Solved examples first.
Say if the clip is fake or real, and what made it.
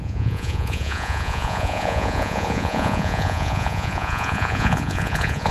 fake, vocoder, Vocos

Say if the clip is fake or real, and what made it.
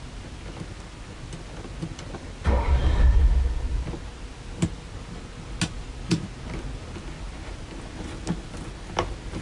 real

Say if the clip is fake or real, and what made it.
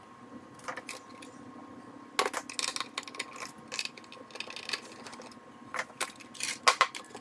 real